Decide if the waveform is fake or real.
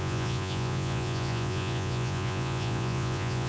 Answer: fake